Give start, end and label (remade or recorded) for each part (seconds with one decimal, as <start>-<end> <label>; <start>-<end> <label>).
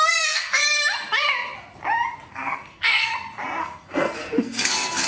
0.0-0.6 remade; 0.6-2.3 recorded; 2.3-3.1 remade; 3.1-3.6 recorded; 3.6-5.1 remade